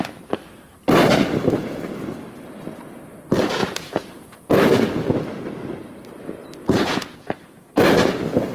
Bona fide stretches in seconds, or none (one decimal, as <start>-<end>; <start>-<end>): 0.0-3.6; 4.5-6.6; 7.7-8.5